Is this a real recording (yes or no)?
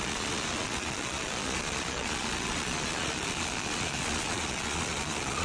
no